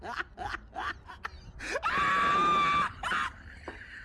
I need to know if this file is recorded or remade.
recorded